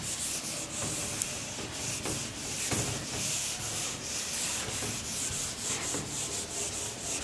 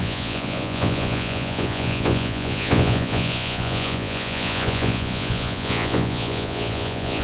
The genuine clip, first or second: first